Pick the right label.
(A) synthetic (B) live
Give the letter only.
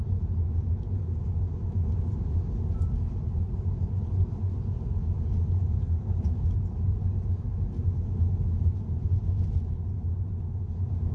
B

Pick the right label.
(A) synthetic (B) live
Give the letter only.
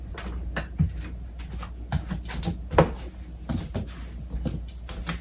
B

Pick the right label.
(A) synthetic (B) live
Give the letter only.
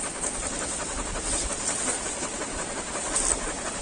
B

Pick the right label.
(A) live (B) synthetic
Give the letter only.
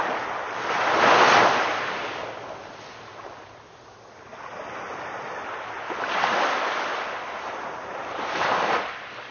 A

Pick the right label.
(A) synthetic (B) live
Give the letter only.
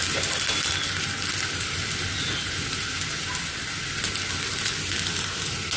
B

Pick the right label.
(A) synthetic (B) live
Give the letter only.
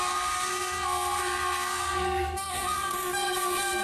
A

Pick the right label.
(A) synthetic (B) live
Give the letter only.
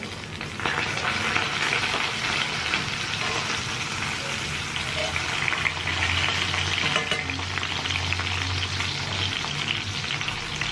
B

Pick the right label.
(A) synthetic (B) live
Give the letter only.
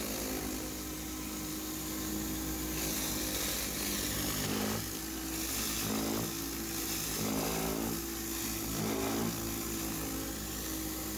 B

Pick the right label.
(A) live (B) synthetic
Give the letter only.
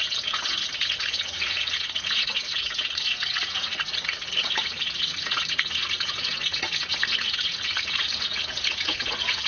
B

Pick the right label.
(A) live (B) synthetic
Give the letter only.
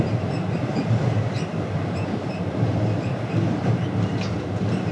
A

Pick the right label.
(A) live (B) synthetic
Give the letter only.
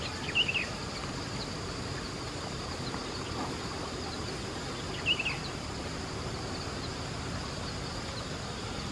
A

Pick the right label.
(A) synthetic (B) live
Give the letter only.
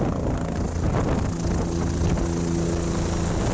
B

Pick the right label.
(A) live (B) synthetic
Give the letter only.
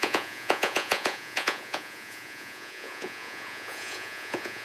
B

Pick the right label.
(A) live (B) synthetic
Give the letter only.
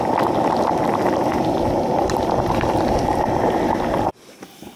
A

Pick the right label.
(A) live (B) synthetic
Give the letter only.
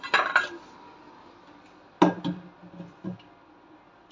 A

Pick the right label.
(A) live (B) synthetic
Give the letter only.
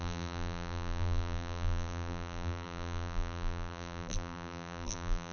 B